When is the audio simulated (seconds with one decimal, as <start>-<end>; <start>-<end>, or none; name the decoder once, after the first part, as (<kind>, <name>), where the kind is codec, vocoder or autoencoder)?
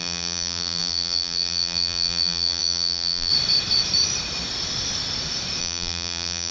0.0-3.3 (vocoder, BigVGAN v2); 5.6-6.5